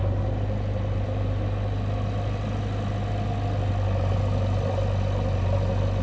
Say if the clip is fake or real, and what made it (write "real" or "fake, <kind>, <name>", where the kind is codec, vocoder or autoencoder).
real